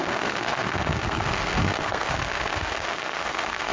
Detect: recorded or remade remade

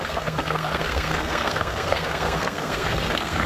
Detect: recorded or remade remade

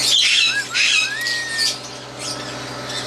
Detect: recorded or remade recorded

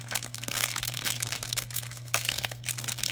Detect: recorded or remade remade